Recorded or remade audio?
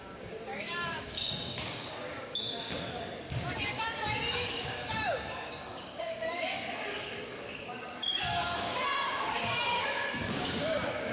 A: remade